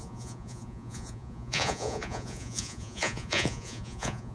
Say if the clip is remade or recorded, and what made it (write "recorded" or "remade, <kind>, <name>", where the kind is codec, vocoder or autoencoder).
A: remade, vocoder, Vocos